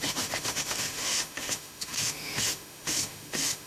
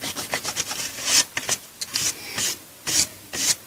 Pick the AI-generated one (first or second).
first